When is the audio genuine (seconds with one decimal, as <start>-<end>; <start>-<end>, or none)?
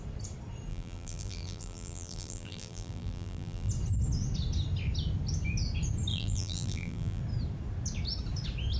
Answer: 0.0-0.7; 3.7-6.1; 7.2-8.8